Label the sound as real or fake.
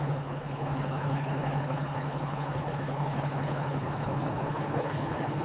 fake